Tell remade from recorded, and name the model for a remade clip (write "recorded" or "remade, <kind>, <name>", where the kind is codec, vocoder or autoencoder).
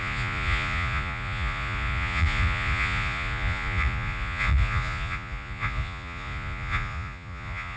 remade, vocoder, Vocos